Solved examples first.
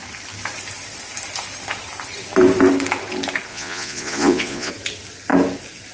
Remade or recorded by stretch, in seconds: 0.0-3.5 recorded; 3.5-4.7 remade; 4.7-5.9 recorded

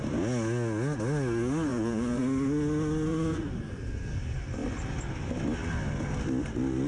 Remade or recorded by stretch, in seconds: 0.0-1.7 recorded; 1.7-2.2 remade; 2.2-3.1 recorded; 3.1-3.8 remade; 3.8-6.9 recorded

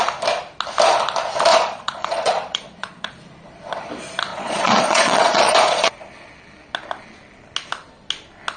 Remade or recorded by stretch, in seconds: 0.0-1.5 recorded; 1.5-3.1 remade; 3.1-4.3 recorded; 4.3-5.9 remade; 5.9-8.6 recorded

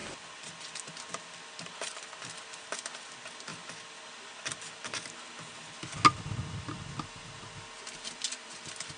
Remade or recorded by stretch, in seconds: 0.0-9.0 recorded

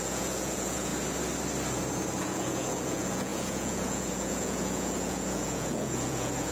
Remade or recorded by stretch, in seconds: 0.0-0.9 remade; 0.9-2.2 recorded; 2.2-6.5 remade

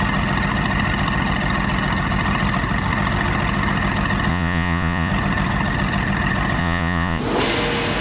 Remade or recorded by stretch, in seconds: 0.0-4.3 recorded; 4.3-5.1 remade; 5.1-6.6 recorded; 6.6-7.2 remade; 7.2-8.0 recorded